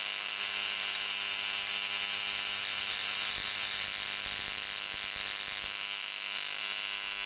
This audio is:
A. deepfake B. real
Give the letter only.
B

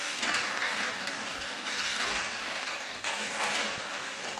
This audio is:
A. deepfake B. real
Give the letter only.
A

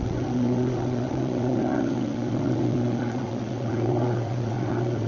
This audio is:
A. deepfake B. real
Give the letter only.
A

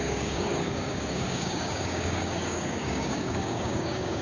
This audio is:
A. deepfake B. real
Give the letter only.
A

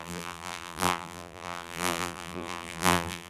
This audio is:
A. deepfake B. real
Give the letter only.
A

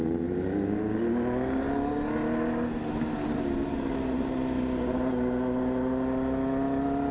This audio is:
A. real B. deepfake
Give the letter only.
A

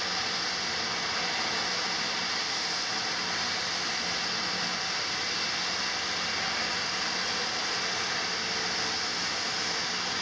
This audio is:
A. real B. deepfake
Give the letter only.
A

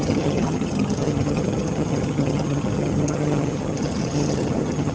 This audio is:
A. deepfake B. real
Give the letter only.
A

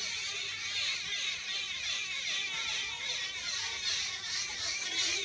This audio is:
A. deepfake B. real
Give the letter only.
B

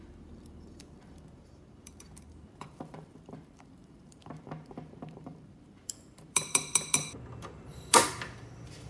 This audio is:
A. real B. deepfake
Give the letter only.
B